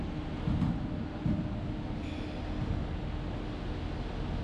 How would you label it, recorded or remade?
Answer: recorded